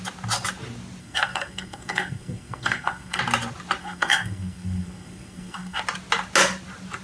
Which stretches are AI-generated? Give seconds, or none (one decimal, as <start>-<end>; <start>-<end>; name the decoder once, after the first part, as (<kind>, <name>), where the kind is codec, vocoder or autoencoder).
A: 1.0-3.2 (codec, SNAC); 3.8-5.8